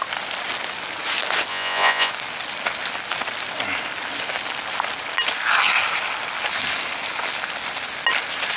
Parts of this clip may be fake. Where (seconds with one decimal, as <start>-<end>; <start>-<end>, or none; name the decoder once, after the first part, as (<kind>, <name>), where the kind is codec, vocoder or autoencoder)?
1.5-2.1 (vocoder, Vocos)